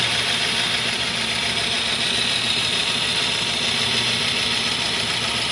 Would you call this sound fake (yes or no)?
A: yes